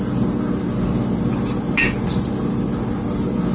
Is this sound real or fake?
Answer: real